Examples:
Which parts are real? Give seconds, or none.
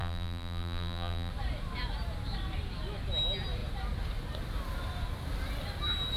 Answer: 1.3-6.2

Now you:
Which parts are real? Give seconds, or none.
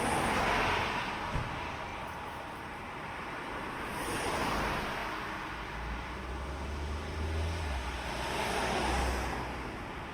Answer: 0.0-1.9; 3.7-10.1